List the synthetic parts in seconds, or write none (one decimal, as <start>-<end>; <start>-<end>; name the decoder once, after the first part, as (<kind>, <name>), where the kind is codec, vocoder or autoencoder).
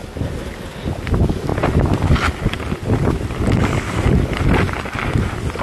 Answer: none